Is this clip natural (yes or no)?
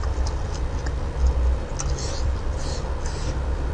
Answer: no